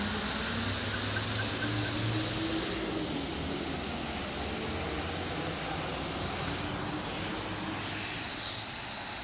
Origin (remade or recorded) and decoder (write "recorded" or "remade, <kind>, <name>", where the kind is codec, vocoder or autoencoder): recorded